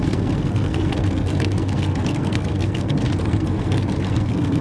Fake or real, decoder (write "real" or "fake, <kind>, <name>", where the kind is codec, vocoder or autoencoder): fake, codec, SNAC